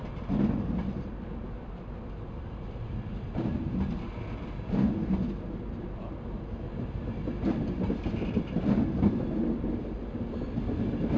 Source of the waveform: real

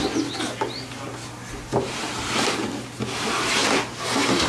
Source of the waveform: real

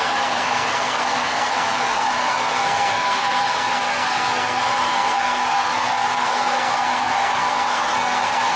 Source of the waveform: fake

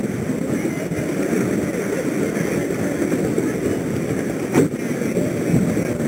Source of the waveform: real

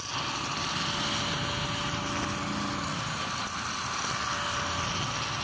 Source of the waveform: real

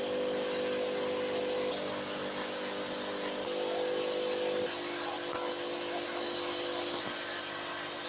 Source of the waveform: real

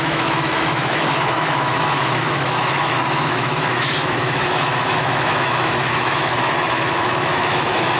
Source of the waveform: fake